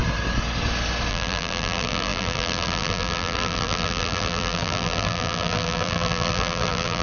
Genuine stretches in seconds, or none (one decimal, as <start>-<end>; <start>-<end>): 0.0-1.1